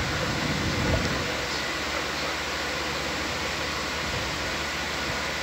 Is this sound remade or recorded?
recorded